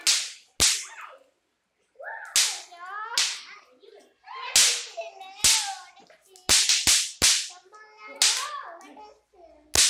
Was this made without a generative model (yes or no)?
yes